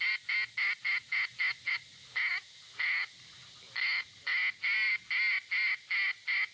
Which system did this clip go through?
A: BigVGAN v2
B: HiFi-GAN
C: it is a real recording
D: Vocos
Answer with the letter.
C